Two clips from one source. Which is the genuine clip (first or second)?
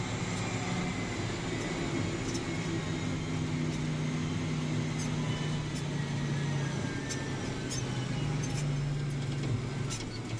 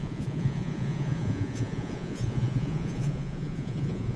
first